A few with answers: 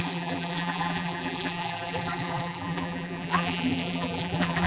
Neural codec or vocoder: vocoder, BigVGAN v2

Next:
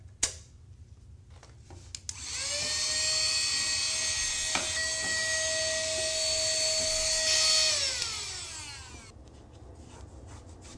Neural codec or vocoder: none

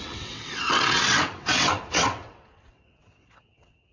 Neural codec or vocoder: vocoder, WaveNeXt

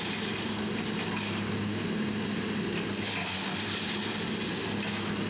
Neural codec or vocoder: none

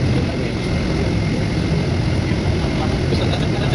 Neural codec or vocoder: none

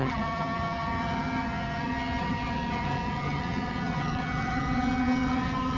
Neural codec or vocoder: vocoder, HiFi-GAN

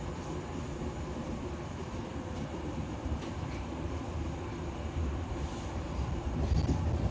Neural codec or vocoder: vocoder, BigVGAN v2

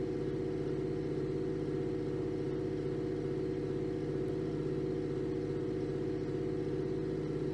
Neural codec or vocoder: none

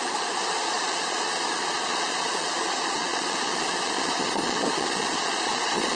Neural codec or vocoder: vocoder, Vocos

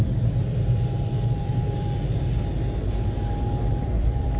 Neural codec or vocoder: vocoder, BigVGAN v2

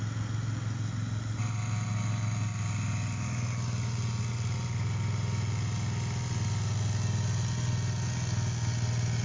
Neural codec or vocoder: none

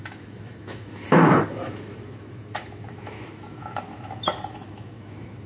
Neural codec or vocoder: autoencoder, DAC-VAE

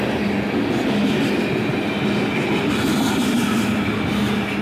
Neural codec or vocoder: none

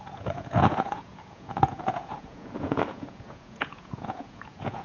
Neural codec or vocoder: vocoder, Vocos